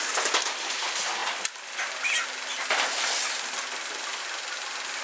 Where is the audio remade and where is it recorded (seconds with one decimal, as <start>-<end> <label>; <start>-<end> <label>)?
0.0-5.0 recorded